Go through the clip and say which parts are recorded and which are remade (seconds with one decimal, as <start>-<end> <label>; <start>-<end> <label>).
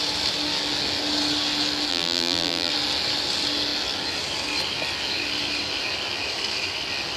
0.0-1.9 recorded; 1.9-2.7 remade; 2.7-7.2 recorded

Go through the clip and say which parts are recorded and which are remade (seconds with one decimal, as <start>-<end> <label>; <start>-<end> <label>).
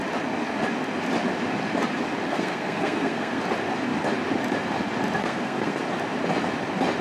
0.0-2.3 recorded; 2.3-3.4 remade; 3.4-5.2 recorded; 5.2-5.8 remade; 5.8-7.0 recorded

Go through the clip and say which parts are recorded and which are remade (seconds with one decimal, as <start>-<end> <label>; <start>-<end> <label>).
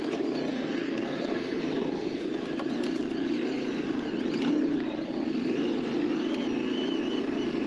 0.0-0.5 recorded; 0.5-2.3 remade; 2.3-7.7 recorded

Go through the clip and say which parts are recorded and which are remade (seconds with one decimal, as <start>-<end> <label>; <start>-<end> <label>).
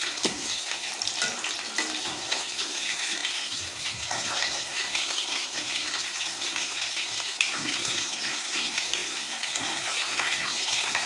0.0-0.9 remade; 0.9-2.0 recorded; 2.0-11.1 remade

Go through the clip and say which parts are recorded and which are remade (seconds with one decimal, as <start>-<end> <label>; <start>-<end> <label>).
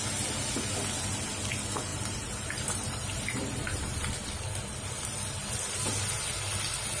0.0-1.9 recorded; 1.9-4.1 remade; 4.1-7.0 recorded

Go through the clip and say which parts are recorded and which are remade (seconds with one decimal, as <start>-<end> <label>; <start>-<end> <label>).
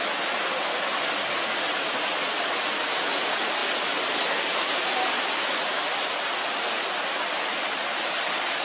0.0-8.6 recorded